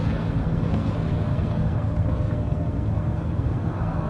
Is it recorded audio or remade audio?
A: remade